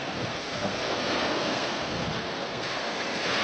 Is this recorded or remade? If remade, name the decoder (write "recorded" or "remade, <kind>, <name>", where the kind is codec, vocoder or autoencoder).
remade, codec, SNAC